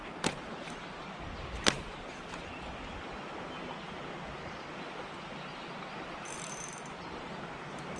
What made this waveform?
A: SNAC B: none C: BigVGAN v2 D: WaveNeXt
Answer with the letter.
B